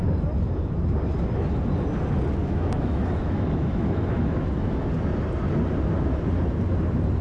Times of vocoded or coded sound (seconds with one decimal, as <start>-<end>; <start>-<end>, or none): 2.4-4.9